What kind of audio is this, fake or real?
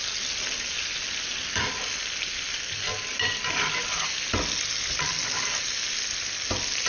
real